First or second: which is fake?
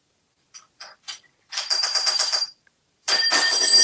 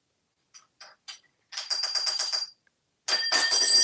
first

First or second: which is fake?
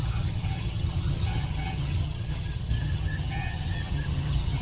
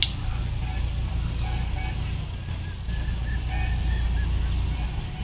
first